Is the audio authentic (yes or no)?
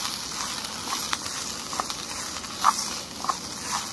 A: yes